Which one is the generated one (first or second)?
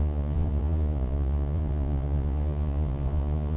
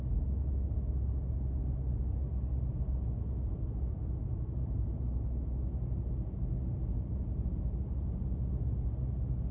first